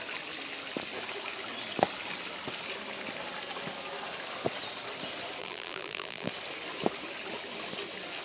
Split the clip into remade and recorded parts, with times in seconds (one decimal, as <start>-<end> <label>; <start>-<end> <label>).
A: 0.0-5.4 recorded; 5.4-6.3 remade; 6.3-8.2 recorded